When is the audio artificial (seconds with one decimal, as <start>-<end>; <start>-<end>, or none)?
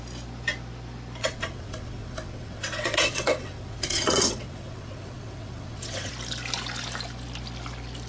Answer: 1.2-6.1